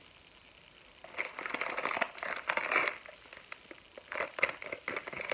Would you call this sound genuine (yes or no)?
yes